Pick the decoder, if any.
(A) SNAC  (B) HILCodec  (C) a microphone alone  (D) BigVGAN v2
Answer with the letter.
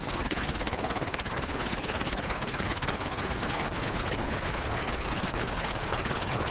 B